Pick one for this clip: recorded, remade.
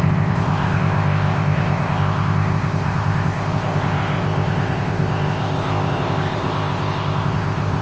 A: remade